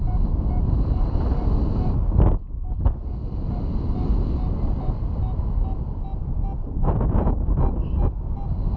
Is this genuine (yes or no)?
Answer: yes